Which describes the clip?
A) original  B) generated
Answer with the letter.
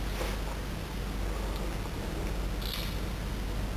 A